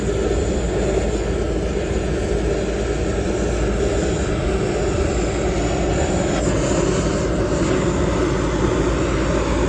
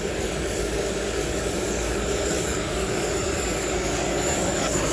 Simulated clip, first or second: second